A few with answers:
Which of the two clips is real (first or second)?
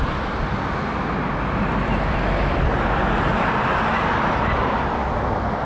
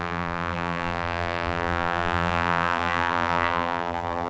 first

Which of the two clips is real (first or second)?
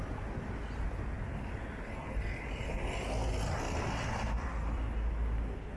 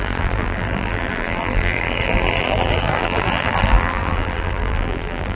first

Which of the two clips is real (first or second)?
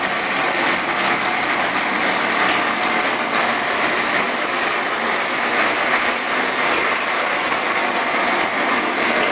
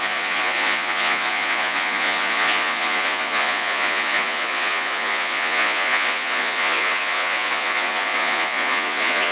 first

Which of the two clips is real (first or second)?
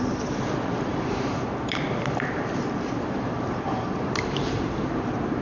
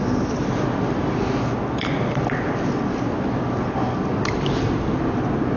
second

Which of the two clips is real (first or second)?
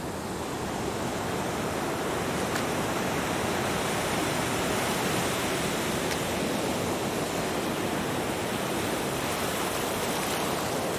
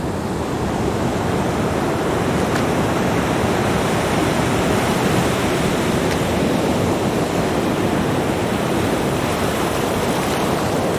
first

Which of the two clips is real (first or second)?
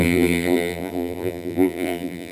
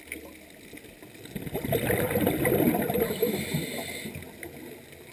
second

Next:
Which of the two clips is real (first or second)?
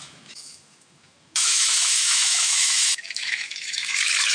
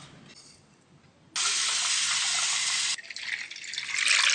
second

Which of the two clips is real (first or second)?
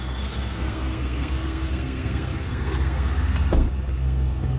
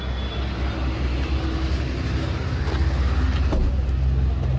second